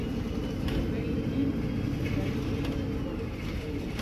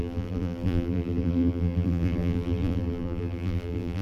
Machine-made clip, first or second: second